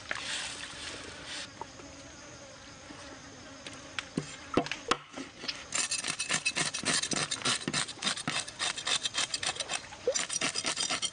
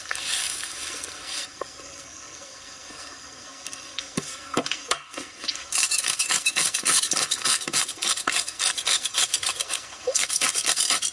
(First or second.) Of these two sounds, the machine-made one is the second